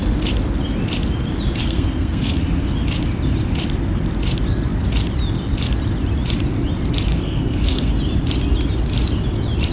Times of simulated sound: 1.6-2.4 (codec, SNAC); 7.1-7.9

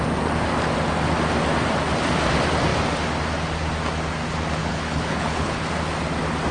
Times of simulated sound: 4.6-5.7 (codec, HILCodec)